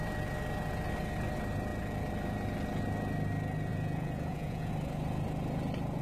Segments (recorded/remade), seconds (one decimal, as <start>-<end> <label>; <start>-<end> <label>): 0.0-3.7 recorded; 3.7-4.7 remade; 4.7-6.0 recorded